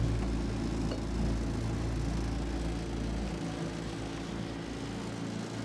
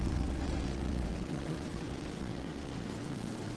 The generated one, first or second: second